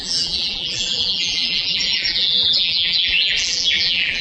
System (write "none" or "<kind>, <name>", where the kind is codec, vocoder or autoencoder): vocoder, BigVGAN v2